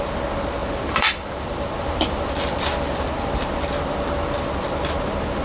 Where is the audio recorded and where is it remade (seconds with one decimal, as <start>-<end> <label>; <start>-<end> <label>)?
0.0-0.6 recorded; 0.6-3.5 remade; 3.5-5.4 recorded